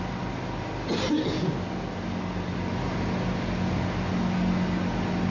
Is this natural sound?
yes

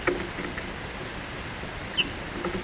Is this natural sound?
yes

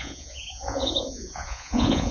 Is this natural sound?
no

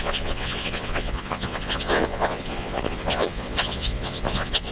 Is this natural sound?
no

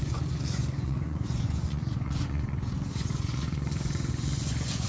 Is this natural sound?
no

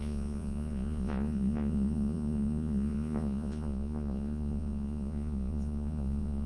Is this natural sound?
no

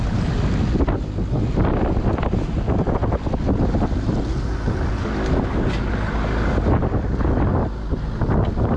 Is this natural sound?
yes